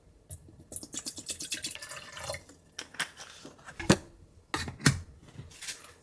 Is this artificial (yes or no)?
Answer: no